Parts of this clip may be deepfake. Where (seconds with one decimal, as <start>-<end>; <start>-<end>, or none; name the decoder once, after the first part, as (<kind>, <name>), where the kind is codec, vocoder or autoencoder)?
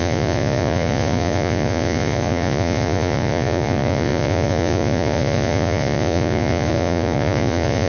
0.0-7.9 (vocoder, Vocos)